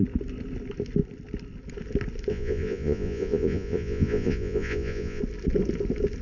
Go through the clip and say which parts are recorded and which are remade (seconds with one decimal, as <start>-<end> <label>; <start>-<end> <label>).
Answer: 0.0-2.3 recorded; 2.3-5.2 remade; 5.2-6.2 recorded